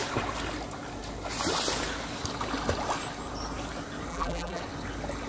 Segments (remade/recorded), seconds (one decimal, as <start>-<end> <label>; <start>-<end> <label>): 0.0-4.1 recorded; 4.1-4.6 remade; 4.6-5.3 recorded